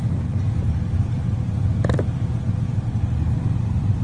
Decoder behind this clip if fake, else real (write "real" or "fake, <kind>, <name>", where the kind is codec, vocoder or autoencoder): fake, vocoder, BigVGAN v2